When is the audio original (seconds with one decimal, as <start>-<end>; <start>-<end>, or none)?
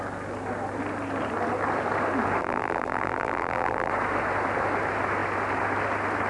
0.0-2.4; 3.9-6.3